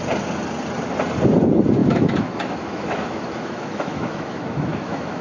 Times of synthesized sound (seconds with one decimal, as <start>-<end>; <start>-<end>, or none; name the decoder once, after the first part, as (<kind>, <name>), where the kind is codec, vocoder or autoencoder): 1.8-5.2 (autoencoder, DAC-VAE)